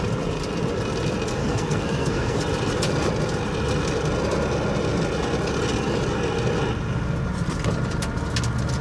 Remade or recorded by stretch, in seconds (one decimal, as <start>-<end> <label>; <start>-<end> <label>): 0.0-1.4 recorded; 1.4-2.4 remade; 2.4-8.8 recorded